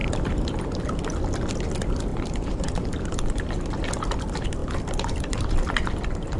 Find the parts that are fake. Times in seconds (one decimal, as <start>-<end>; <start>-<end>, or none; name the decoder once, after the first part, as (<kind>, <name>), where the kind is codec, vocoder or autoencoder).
2.1-3.5 (vocoder, BigVGAN v2)